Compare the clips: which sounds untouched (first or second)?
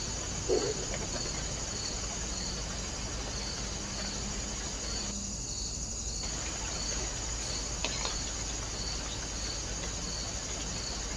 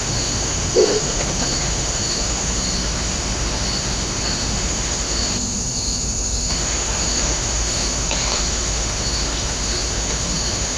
first